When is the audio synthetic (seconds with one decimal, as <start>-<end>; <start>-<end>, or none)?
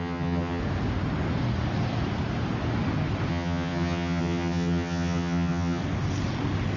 0.0-0.6; 3.3-5.8